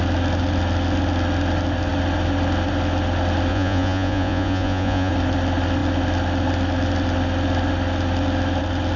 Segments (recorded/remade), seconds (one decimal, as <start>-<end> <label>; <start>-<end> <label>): 0.0-3.5 recorded; 3.5-5.1 remade; 5.1-9.0 recorded